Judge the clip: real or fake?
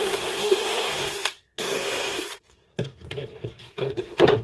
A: fake